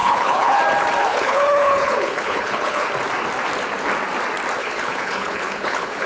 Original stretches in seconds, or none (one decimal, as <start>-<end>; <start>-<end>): 0.6-1.1; 2.9-4.6

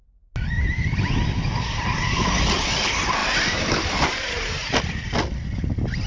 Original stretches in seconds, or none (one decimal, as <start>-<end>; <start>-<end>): 0.0-3.2; 4.8-6.1

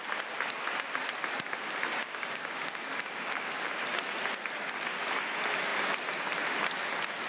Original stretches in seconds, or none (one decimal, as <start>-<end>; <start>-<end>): 0.0-2.0; 3.7-7.3

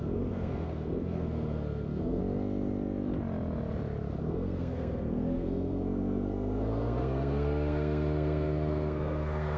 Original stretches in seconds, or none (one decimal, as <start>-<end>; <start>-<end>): 2.2-4.2

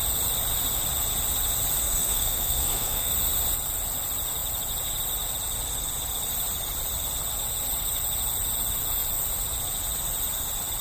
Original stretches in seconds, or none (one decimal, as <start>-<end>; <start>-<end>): 0.0-1.8; 3.1-10.8

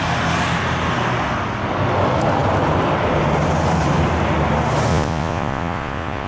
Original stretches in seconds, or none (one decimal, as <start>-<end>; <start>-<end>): 0.0-4.9